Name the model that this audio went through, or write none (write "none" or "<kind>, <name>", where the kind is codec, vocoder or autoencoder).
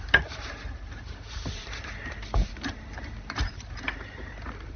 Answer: vocoder, BigVGAN v2